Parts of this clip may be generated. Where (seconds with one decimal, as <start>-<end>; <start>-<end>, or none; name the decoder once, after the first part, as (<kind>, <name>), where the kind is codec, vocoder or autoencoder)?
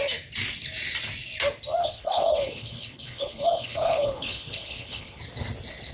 1.8-5.2 (codec, HILCodec)